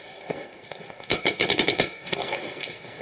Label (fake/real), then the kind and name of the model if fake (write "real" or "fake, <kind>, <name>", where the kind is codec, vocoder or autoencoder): fake, codec, SNAC